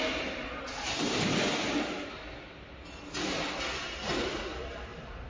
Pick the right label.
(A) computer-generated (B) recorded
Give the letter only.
B